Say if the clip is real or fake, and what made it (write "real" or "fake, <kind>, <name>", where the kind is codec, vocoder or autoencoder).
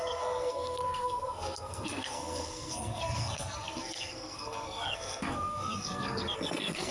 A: fake, codec, SNAC